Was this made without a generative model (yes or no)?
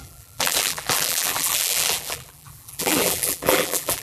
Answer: no